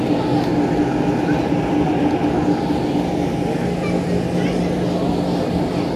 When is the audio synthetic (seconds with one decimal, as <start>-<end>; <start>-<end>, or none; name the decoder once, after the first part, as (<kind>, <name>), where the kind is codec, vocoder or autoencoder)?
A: none